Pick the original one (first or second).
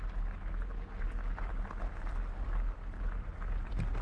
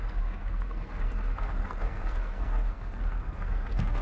first